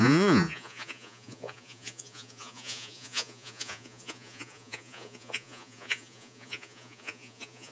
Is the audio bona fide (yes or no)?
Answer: no